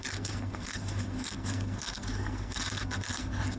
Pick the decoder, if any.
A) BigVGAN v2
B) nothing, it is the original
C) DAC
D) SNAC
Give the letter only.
D